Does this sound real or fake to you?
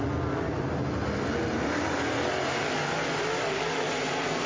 real